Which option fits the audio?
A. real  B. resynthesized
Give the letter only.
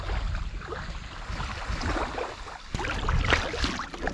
A